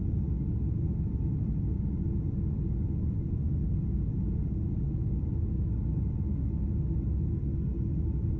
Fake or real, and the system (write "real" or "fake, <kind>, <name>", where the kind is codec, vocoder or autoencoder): real